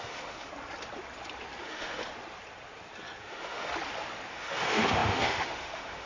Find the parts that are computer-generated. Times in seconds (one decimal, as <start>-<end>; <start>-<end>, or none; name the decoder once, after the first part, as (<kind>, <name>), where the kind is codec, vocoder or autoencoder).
0.0-0.5 (autoencoder, DAC-VAE); 1.6-2.0; 3.2-3.7; 4.3-6.1